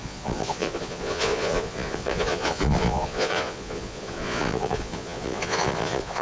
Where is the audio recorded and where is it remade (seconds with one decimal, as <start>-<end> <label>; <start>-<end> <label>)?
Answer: 0.0-6.2 remade